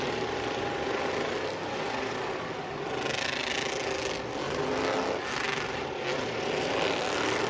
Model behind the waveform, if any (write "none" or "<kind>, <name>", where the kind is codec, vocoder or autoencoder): none